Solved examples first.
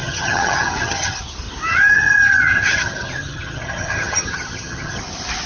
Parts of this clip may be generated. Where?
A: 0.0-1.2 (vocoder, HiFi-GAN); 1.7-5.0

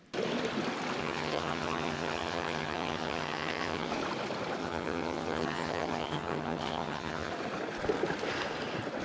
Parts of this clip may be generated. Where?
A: 1.0-3.9 (vocoder, HiFi-GAN); 4.6-7.3

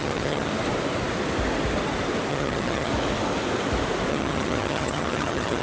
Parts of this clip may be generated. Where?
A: 0.0-0.5 (vocoder, HiFi-GAN); 2.3-2.9; 4.1-5.6

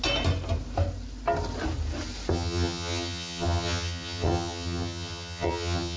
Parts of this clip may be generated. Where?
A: 2.3-6.0 (vocoder, HiFi-GAN)

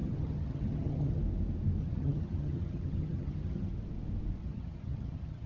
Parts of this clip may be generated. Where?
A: 0.0-1.2 (vocoder, HiFi-GAN); 1.8-3.7; 4.4-5.5

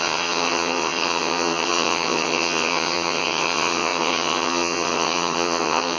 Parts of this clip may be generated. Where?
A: 0.0-6.0 (vocoder, HiFi-GAN)

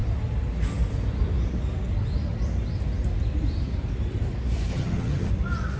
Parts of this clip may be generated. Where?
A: 4.7-5.3 (vocoder, HiFi-GAN)

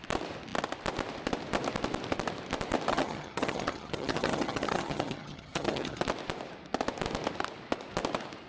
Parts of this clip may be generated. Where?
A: 2.9-6.0 (vocoder, HiFi-GAN)